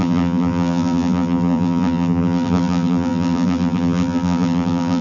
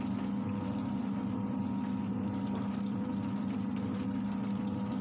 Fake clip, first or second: first